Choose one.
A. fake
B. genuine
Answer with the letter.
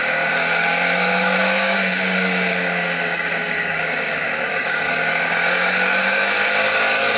A